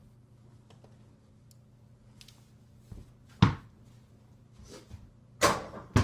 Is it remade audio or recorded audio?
recorded